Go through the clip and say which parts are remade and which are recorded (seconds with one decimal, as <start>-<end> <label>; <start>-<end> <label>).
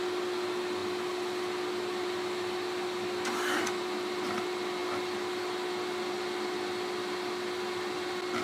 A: 0.0-8.4 recorded